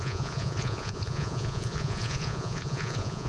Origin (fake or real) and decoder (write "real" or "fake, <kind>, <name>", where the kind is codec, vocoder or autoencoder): fake, vocoder, Vocos